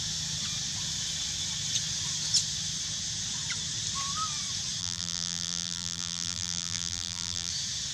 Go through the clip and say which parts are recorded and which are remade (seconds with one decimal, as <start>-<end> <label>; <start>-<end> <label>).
0.0-4.8 recorded; 4.8-7.5 remade; 7.5-7.9 recorded